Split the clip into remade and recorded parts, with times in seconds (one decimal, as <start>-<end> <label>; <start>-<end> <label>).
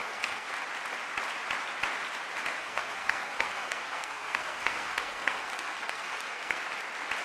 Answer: 0.0-0.5 remade; 0.5-2.6 recorded; 2.6-6.6 remade; 6.6-7.2 recorded